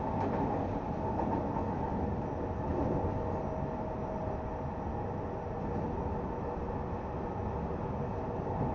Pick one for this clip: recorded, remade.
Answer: recorded